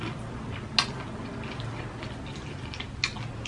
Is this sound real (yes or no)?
yes